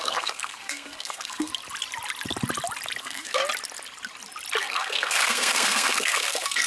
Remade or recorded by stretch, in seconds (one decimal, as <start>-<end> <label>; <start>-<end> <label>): 0.0-1.5 remade; 1.5-3.0 recorded; 3.0-3.4 remade; 3.4-4.6 recorded; 4.6-6.7 remade